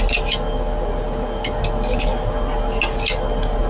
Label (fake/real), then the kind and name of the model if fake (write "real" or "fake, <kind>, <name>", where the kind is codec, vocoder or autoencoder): real